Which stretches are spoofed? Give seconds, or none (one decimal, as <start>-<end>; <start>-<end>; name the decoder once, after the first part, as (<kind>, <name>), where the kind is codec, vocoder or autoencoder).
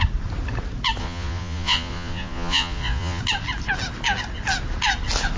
1.0-3.2 (vocoder, Vocos)